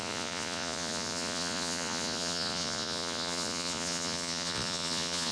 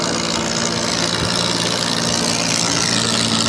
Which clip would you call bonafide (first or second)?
second